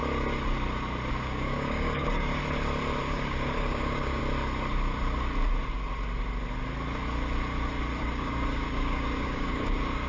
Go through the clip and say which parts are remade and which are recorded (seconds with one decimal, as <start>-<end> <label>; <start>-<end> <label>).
0.0-1.1 recorded; 1.1-2.4 remade; 2.4-3.0 recorded; 3.0-4.2 remade; 4.2-8.0 recorded; 8.0-10.1 remade